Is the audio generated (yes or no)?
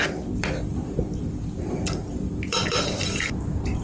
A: yes